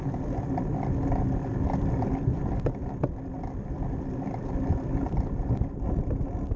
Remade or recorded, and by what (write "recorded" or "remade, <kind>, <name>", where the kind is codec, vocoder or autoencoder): recorded